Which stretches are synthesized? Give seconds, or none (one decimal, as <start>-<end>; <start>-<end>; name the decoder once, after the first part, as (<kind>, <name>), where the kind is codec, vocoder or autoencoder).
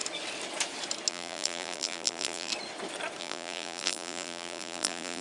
1.1-2.5 (vocoder, BigVGAN v2); 3.2-5.2